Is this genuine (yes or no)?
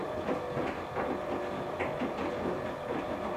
yes